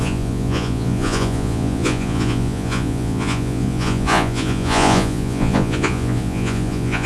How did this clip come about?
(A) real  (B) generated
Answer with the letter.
B